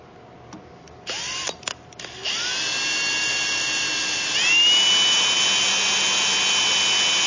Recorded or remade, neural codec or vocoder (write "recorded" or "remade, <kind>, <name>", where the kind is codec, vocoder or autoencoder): recorded